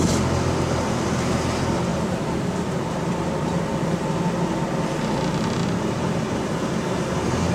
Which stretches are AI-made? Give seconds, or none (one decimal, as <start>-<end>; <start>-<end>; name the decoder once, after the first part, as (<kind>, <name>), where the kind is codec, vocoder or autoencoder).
none